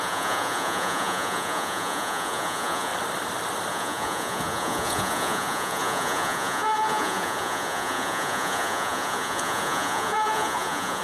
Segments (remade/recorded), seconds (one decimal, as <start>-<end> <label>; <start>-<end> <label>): 0.0-2.9 remade; 2.9-3.7 recorded; 3.7-11.0 remade